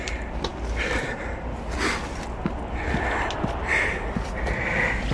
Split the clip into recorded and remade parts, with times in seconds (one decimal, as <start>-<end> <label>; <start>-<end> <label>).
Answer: 0.0-5.1 recorded